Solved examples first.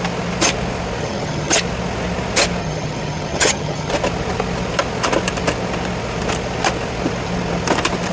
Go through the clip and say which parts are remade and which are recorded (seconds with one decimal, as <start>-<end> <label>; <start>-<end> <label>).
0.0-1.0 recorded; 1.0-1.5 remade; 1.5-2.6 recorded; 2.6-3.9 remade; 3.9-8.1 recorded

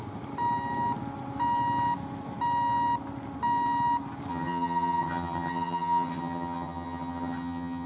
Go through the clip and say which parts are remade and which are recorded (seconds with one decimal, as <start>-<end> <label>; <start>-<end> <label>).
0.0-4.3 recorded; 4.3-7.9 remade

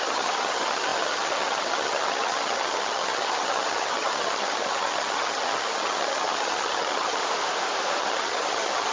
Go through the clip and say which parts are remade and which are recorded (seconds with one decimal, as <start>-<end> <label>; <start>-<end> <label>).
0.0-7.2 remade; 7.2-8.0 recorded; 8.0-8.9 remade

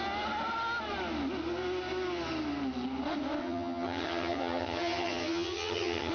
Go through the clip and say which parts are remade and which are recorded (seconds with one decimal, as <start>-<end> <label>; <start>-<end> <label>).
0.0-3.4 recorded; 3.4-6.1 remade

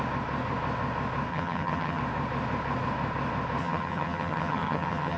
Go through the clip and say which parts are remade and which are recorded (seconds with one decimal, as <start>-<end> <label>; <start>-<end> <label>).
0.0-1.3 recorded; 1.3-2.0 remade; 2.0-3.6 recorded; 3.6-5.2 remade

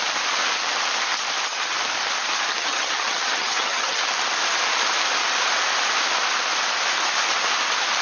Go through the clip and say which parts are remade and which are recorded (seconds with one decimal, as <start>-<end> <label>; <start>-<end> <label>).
0.0-2.6 recorded; 2.6-4.1 remade; 4.1-8.0 recorded

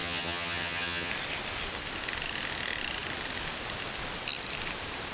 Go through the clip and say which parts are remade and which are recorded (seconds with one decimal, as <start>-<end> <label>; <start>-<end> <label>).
0.0-1.1 remade; 1.1-5.1 recorded

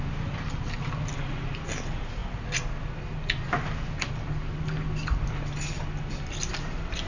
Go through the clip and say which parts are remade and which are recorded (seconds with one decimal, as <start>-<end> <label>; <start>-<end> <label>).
0.0-7.1 recorded